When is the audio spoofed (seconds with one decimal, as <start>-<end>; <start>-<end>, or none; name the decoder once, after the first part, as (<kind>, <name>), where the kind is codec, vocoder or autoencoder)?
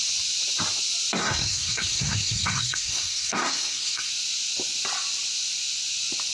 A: 1.2-4.1 (codec, SNAC)